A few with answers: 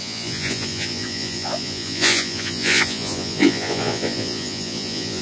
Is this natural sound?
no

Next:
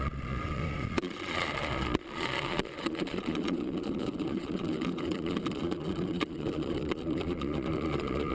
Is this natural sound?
no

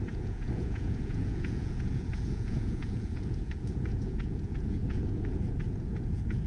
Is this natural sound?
no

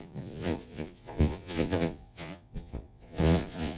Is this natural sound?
no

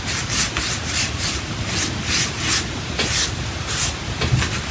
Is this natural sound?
yes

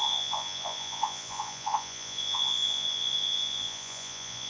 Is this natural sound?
no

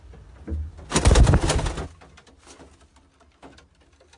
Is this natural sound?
yes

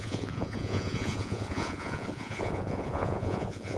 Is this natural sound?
no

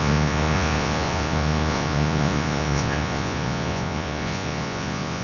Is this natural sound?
no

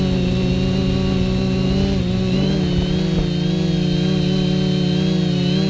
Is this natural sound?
yes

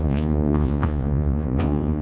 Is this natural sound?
no